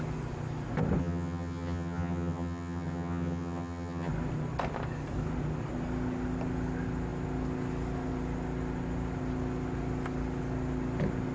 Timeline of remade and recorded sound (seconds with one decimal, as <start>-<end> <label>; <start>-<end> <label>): 0.0-1.0 recorded; 1.0-4.1 remade; 4.1-11.3 recorded